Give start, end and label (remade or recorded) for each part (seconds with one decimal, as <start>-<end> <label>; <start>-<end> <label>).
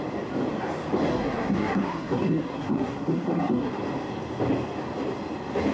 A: 0.0-1.1 recorded; 1.1-3.7 remade; 3.7-5.7 recorded